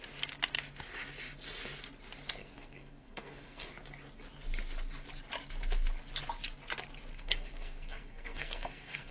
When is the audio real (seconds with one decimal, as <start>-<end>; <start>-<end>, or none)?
0.0-2.4; 3.7-7.1